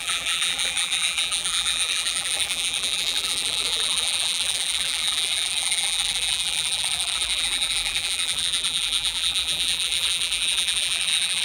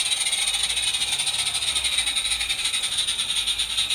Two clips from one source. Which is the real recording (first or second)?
second